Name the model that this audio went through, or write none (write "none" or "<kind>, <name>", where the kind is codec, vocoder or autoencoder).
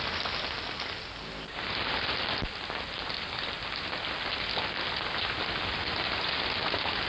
none